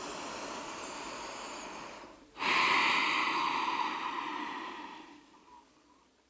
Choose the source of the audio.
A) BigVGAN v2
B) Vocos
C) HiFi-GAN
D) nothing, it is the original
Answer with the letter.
D